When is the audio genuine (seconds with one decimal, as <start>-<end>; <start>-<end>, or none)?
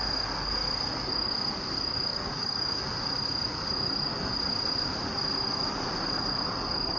0.0-2.1; 2.8-7.0